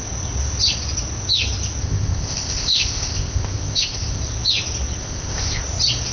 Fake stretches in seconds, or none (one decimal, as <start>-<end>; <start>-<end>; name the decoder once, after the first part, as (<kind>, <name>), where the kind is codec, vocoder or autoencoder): 1.8-4.2 (codec, ZipCodec); 5.0-5.6

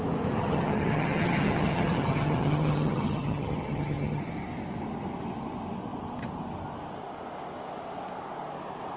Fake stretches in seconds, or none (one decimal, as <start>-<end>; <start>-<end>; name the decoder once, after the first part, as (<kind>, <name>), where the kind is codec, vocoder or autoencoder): 0.4-4.2 (vocoder, HiFi-GAN)

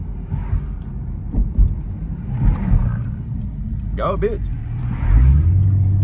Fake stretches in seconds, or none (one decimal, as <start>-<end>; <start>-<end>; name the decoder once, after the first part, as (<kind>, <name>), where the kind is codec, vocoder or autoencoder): 1.2-4.8 (vocoder, BigVGAN v2)

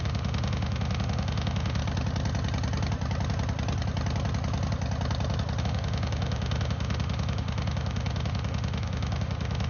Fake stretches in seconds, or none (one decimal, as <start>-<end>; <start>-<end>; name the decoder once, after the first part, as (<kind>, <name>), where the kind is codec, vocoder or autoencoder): 0.0-1.8 (autoencoder, DAC-VAE); 5.6-9.7

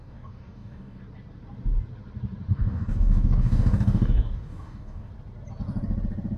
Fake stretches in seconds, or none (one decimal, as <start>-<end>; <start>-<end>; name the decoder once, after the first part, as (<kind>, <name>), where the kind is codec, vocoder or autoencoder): 0.0-1.0 (codec, DAC); 2.5-5.1

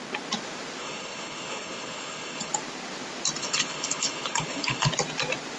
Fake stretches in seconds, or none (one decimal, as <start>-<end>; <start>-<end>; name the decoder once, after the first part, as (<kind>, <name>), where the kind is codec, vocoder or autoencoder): 0.8-2.5 (codec, HILCodec); 3.4-4.9